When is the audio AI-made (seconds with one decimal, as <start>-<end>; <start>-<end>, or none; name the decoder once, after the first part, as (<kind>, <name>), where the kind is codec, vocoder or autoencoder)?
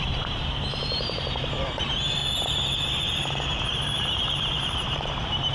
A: 0.0-2.2 (vocoder, BigVGAN v2); 3.6-5.5